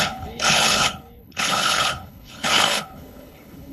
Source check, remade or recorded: remade